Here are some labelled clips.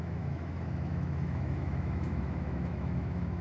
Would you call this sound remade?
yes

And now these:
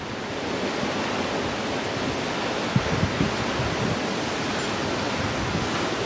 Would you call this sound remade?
no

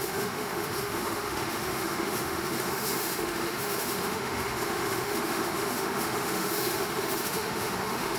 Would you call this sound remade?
yes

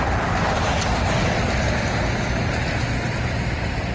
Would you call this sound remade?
no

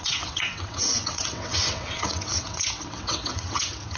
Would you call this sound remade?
yes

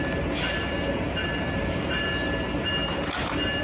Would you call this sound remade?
no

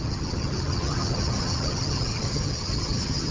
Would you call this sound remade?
yes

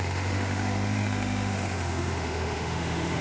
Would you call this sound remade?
yes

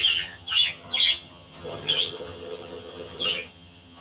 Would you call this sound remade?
yes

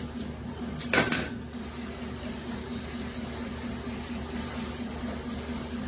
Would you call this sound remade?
no